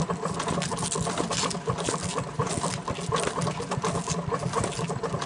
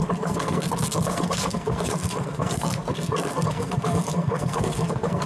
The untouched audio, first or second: first